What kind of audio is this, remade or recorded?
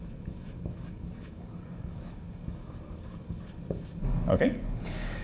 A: remade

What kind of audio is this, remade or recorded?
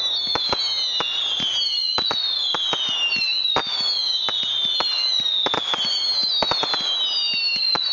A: recorded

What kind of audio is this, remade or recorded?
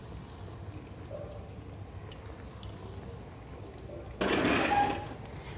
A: recorded